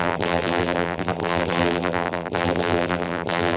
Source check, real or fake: fake